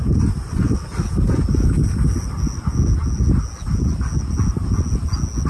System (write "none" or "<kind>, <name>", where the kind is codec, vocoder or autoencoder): none